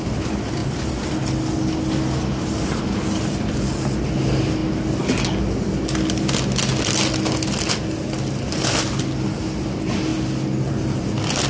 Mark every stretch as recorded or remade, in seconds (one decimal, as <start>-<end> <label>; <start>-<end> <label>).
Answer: 0.0-11.5 recorded